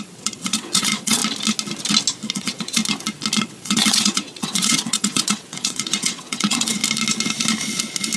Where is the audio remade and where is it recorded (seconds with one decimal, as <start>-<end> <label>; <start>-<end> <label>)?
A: 0.0-1.2 remade; 1.2-2.3 recorded; 2.3-2.8 remade; 2.8-3.4 recorded; 3.4-6.8 remade; 6.8-8.2 recorded